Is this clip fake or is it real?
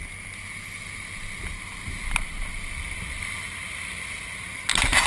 real